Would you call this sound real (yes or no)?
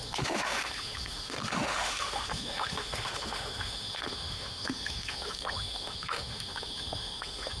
no